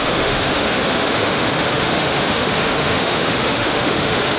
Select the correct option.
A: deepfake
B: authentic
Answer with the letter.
A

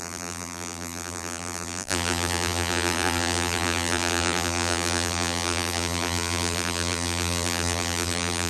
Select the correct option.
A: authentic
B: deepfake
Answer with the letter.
B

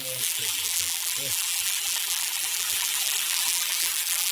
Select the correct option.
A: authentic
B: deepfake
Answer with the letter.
B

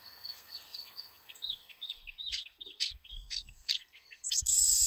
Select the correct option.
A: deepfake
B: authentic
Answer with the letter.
A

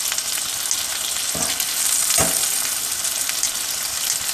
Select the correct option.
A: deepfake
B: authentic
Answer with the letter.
B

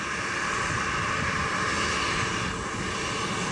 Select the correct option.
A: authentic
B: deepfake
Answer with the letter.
A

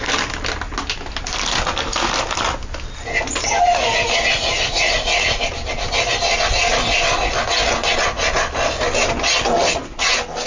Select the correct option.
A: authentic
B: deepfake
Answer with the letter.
A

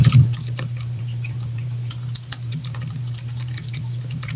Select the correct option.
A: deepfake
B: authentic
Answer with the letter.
A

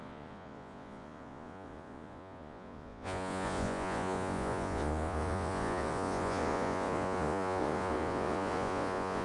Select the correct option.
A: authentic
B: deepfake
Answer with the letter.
B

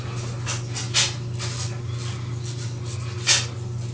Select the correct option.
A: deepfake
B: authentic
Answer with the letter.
B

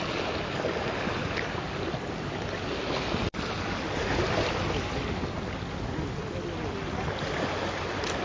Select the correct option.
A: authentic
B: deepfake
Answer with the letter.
A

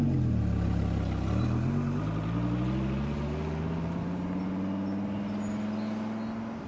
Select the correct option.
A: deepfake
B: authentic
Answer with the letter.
B